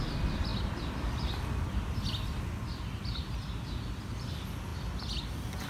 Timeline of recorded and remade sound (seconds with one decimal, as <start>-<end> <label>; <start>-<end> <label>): 0.0-5.7 recorded